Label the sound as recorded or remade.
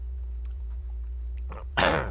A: remade